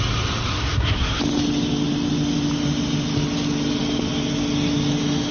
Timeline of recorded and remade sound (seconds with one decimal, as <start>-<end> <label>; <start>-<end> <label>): 0.0-0.5 recorded; 0.5-1.2 remade; 1.2-5.3 recorded